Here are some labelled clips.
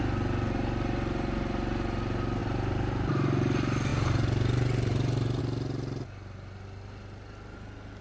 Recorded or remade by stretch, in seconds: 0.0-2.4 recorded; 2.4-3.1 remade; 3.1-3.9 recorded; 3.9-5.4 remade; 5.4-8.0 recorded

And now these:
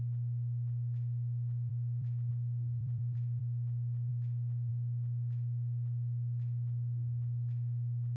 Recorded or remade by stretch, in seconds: 0.0-1.7 recorded; 1.7-2.3 remade; 2.3-2.8 recorded; 2.8-3.4 remade; 3.4-8.2 recorded

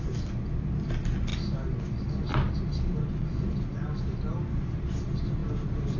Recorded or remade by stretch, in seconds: 0.0-6.0 recorded

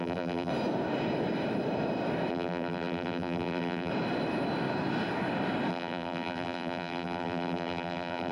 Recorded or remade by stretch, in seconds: 0.0-0.5 remade; 0.5-2.3 recorded; 2.3-3.9 remade; 3.9-5.7 recorded; 5.7-8.3 remade

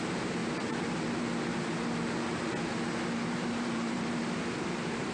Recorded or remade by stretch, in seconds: 0.0-0.4 recorded; 0.4-1.2 remade; 1.2-3.2 recorded; 3.2-4.2 remade; 4.2-5.1 recorded

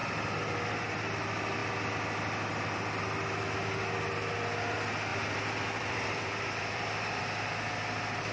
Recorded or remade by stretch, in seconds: 0.0-5.1 recorded; 5.1-7.2 remade; 7.2-8.3 recorded

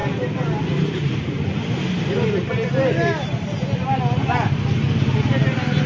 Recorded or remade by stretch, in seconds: 0.0-5.9 recorded

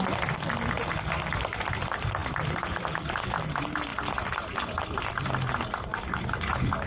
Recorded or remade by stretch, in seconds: 0.0-6.9 recorded